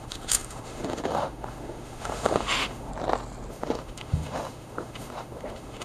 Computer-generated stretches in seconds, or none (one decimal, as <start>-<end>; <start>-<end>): 0.0-2.9; 3.5-5.8